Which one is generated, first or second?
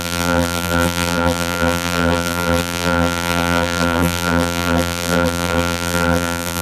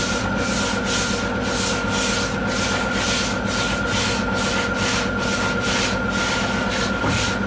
first